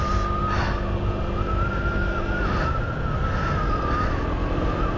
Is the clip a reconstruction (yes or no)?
no